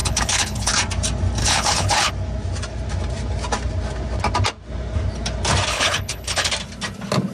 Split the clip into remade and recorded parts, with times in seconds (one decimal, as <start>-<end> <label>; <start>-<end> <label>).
0.0-0.7 remade; 0.7-1.4 recorded; 1.4-2.1 remade; 2.1-5.7 recorded; 5.7-6.5 remade; 6.5-7.3 recorded